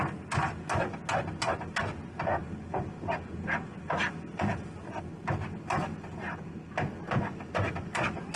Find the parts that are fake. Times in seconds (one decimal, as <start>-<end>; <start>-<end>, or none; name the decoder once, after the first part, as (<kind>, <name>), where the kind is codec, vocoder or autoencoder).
2.4-3.3 (vocoder, BigVGAN v2); 3.7-5.0